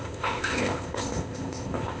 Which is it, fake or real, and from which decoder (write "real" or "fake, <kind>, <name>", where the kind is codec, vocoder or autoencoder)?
fake, codec, ZipCodec